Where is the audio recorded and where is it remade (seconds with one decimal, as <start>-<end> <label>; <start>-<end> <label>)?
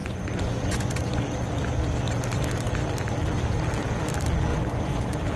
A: 0.0-1.2 remade; 1.2-4.5 recorded; 4.5-5.0 remade; 5.0-5.4 recorded